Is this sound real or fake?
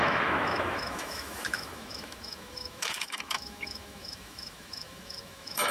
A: fake